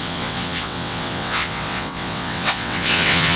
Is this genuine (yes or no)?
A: no